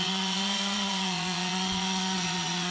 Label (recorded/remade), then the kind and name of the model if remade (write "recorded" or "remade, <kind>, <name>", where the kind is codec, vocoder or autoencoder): remade, vocoder, Vocos